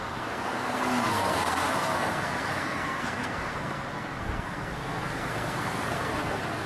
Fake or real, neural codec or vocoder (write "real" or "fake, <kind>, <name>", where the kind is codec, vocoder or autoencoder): fake, codec, SNAC